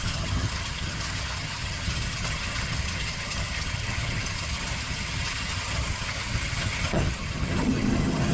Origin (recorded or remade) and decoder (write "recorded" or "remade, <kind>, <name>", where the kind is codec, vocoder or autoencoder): remade, vocoder, HiFi-GAN